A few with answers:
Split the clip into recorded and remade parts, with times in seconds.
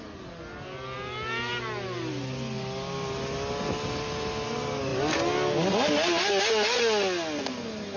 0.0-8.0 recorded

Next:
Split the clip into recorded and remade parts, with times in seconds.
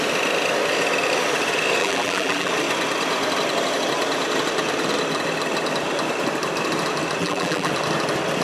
0.0-1.8 recorded; 1.8-2.5 remade; 2.5-7.2 recorded; 7.2-7.7 remade; 7.7-8.4 recorded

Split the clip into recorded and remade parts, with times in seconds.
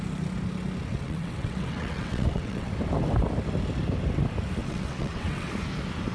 0.0-0.9 recorded; 0.9-2.7 remade; 2.7-4.6 recorded; 4.6-5.5 remade; 5.5-6.1 recorded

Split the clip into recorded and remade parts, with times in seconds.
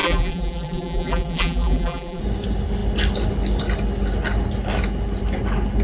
0.0-2.2 remade; 2.2-5.8 recorded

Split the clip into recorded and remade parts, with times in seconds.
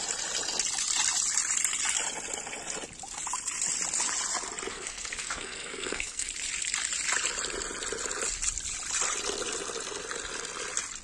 0.0-4.7 recorded; 4.7-6.3 remade; 6.3-11.0 recorded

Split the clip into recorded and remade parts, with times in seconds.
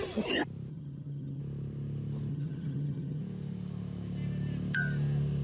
0.0-0.7 recorded; 0.7-1.4 remade; 1.4-2.3 recorded; 2.3-3.2 remade; 3.2-5.4 recorded